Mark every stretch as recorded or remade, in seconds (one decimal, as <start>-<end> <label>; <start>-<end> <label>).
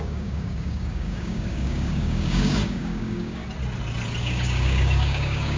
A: 0.0-3.4 remade; 3.4-4.2 recorded; 4.2-5.6 remade